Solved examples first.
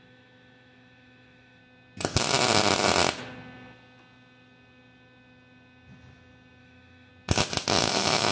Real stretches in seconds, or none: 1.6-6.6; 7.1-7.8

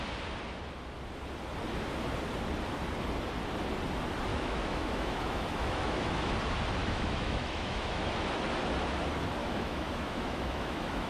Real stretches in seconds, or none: 0.0-4.3; 6.3-6.8; 8.1-9.4

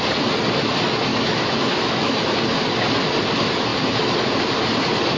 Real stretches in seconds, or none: 0.0-1.1; 2.2-5.2

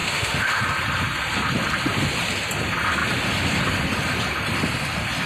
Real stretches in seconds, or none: 0.6-5.3

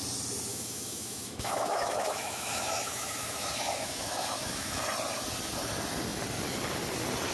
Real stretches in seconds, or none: 0.0-0.5; 4.8-7.3